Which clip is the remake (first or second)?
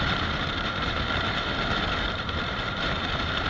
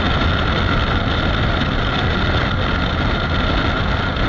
first